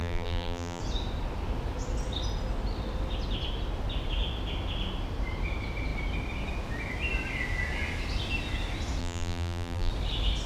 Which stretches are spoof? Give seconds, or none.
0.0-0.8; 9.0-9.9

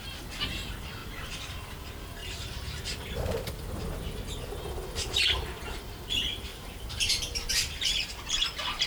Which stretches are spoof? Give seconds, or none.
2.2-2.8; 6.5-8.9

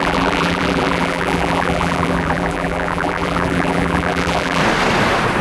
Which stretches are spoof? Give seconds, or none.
0.0-4.6

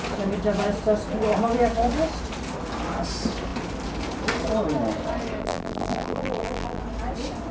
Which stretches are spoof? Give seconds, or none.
5.4-6.8

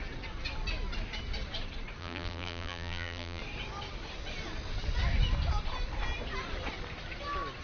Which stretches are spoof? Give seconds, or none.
2.0-3.4

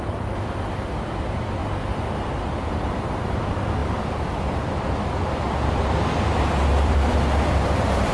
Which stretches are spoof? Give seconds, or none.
0.0-1.6; 3.0-8.1